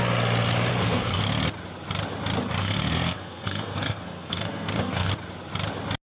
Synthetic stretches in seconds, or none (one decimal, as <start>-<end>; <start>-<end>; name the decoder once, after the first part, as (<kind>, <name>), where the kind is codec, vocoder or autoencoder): 0.7-1.2 (codec, SNAC); 2.6-5.1